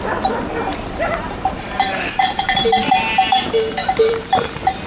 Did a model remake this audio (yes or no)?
yes